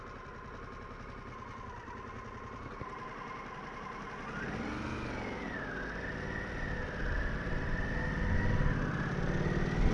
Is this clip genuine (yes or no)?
yes